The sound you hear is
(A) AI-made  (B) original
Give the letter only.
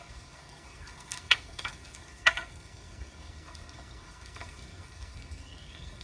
A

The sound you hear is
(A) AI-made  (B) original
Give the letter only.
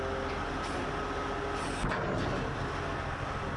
B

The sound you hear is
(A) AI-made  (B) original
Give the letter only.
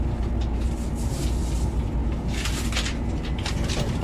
B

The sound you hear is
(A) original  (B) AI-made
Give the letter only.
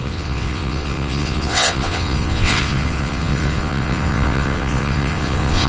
B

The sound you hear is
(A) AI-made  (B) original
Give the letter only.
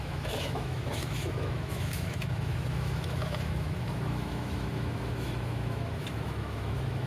A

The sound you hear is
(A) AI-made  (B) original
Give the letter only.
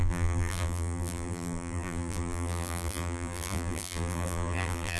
A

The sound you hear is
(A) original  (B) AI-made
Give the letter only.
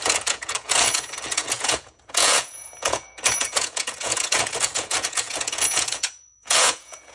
B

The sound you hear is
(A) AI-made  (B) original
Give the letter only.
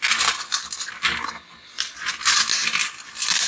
B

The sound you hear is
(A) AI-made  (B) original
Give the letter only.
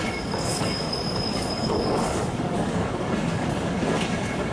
A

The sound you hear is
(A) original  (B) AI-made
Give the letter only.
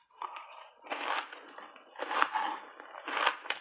A